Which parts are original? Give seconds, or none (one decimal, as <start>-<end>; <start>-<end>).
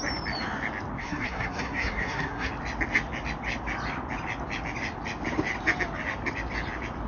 0.0-1.0; 2.5-7.1